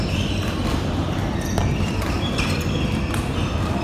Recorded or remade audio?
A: recorded